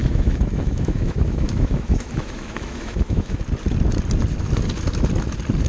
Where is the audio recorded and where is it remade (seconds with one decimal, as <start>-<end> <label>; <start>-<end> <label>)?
0.0-3.4 remade; 3.4-5.7 recorded